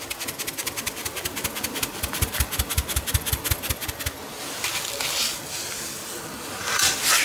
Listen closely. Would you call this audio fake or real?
real